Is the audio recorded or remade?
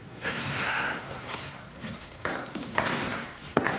remade